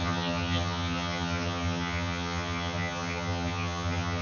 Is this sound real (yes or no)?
no